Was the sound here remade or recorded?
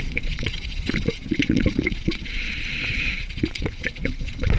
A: remade